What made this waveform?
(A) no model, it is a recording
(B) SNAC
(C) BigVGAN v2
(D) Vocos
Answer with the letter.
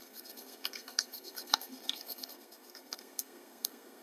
B